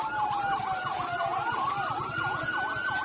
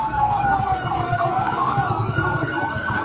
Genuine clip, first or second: first